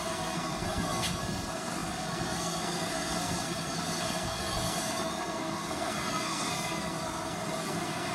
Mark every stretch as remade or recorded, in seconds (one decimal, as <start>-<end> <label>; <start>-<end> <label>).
0.0-8.1 remade